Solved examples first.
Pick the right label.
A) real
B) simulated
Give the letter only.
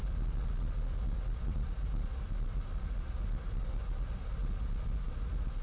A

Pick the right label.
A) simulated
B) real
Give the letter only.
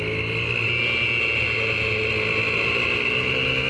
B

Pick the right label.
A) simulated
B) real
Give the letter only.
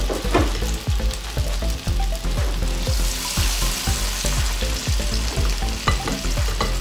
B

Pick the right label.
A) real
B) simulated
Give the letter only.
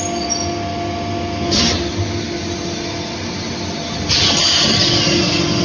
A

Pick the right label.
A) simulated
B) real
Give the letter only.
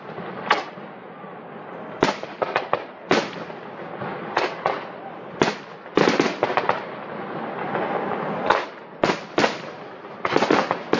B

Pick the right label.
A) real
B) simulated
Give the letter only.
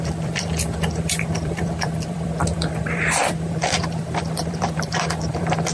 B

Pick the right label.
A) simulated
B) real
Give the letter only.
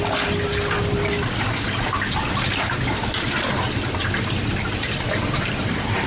A